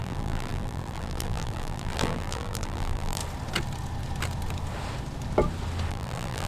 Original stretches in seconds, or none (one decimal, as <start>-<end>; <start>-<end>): 3.2-5.9